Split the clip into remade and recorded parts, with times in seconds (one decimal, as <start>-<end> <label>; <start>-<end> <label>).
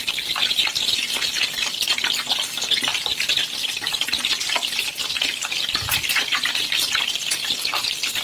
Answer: 0.0-2.9 recorded; 2.9-3.7 remade; 3.7-8.2 recorded